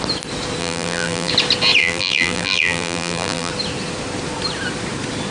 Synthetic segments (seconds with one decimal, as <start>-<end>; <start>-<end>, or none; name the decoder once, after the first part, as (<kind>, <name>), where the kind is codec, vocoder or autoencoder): 0.6-1.3 (vocoder, BigVGAN v2); 1.8-3.5

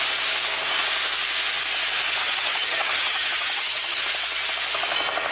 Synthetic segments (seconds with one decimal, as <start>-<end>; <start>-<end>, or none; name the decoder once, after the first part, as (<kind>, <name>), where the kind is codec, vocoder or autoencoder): 2.2-4.0 (vocoder, HiFi-GAN)

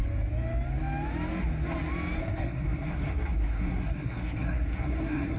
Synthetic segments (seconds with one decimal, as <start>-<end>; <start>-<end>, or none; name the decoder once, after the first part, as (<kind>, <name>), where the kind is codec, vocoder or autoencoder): 2.2-5.4 (codec, SNAC)

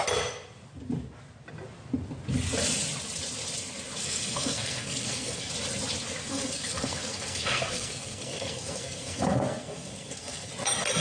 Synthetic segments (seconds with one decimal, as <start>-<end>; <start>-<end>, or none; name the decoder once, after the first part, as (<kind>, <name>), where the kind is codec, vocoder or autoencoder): 4.0-5.5 (codec, SNAC); 6.2-10.5

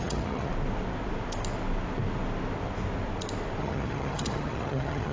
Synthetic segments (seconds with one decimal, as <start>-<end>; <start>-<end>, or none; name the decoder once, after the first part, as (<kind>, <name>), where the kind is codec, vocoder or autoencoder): 0.0-0.5 (vocoder, HiFi-GAN); 3.6-5.1

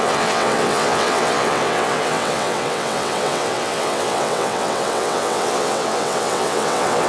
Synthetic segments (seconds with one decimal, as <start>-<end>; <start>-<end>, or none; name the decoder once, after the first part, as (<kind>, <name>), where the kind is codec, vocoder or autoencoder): 0.0-7.1 (vocoder, WaveNeXt)